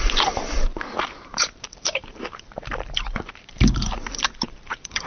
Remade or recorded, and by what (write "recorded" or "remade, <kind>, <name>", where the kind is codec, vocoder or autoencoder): remade, vocoder, BigVGAN v2